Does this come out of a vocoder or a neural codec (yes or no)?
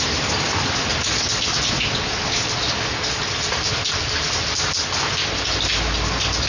no